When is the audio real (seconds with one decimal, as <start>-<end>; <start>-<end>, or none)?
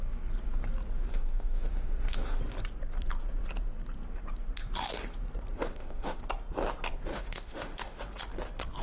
0.0-1.1; 2.4-5.7; 6.2-7.1; 8.0-8.8